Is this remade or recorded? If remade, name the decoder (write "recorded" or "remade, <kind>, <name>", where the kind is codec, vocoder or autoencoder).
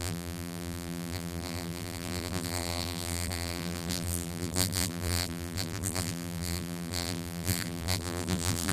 remade, vocoder, BigVGAN v2